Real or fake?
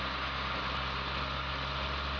real